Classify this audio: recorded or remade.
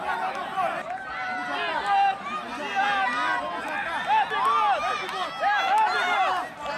recorded